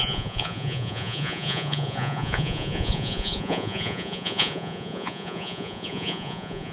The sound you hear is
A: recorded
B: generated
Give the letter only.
B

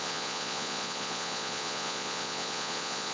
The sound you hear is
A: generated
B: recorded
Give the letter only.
A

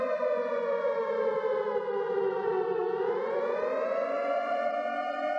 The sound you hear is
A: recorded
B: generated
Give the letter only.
B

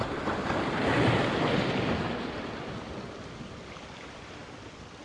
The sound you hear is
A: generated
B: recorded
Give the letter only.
B